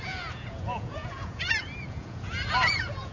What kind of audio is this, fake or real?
fake